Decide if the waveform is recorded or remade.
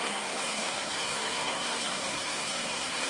remade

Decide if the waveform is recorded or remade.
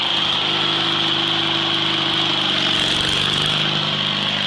recorded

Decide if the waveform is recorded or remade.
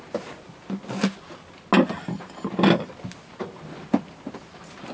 recorded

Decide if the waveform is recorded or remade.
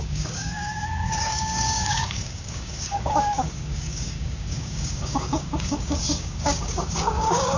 remade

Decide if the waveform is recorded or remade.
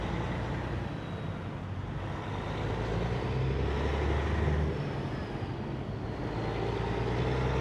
recorded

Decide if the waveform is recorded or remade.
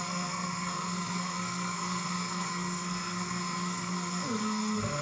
remade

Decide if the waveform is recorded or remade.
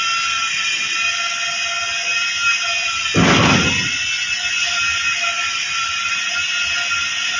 recorded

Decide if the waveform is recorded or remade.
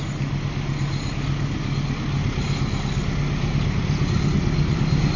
recorded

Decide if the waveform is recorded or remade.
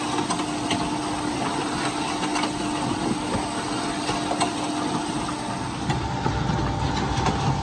recorded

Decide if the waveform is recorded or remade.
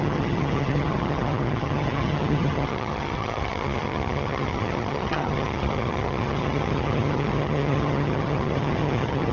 remade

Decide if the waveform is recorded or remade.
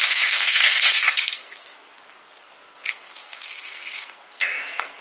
remade